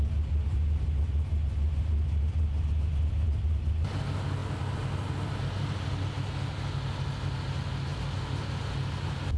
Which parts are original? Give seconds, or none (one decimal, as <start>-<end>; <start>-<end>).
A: 0.0-9.4